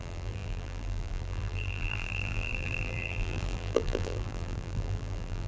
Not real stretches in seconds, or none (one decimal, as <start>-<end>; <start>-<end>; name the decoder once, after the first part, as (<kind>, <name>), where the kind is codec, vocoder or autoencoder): 0.0-5.5 (vocoder, BigVGAN v2)